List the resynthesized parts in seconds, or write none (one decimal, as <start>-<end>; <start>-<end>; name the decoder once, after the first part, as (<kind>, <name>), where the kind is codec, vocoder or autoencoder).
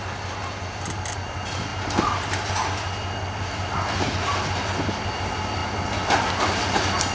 none